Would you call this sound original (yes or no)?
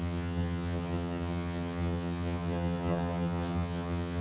no